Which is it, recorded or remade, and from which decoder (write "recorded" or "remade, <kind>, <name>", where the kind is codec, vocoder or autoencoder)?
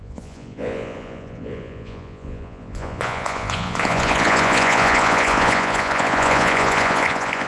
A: remade, vocoder, Vocos